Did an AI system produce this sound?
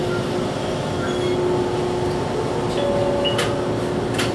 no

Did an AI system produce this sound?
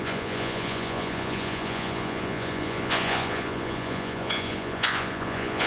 yes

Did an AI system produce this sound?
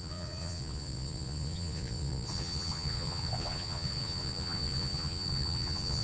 yes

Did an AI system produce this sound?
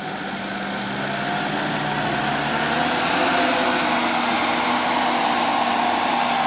no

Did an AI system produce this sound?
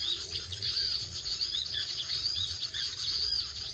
yes